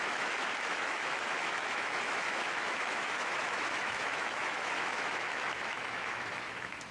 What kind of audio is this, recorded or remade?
remade